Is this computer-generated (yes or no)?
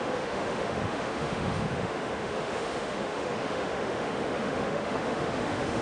yes